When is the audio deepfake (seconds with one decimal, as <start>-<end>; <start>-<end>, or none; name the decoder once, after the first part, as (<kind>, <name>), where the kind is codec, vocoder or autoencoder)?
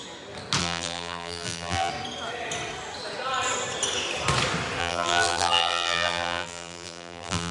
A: 0.6-1.9 (vocoder, BigVGAN v2); 4.8-7.5